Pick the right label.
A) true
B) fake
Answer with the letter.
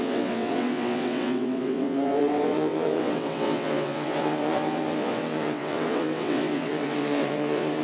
B